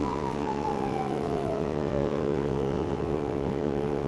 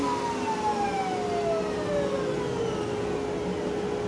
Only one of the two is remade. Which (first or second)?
first